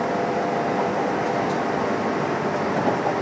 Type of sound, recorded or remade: remade